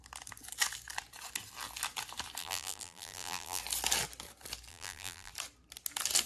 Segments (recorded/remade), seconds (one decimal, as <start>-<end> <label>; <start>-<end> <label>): 0.0-2.4 recorded; 2.4-3.6 remade; 3.6-4.7 recorded; 4.7-5.3 remade; 5.3-6.3 recorded